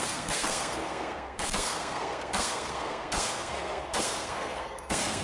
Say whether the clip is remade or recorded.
remade